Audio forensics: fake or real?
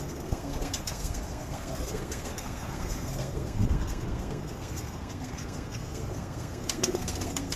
fake